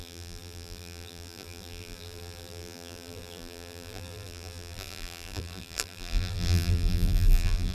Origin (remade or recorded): remade